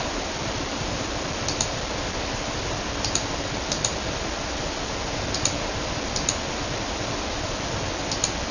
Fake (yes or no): no